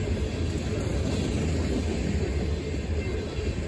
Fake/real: real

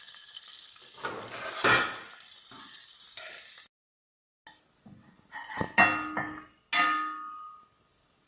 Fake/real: real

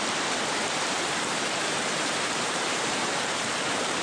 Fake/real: fake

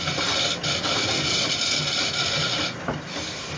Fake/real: real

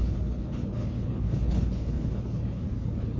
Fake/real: fake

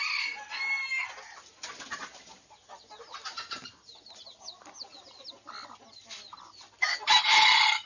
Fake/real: real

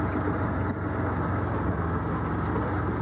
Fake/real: real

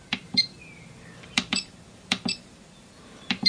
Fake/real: fake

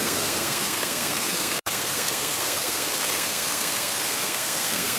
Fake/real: fake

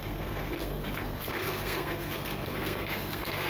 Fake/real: fake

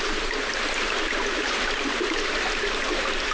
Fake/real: real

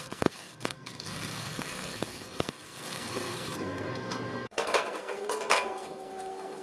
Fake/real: fake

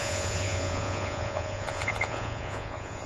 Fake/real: fake